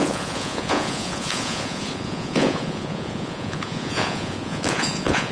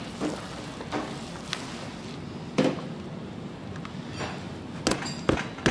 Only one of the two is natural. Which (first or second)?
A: second